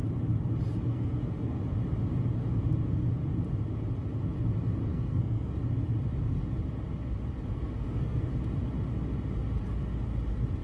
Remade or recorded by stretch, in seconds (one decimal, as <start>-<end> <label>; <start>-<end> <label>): 0.0-0.9 recorded; 0.9-1.6 remade; 1.6-4.9 recorded; 4.9-5.5 remade; 5.5-7.5 recorded; 7.5-8.3 remade; 8.3-10.6 recorded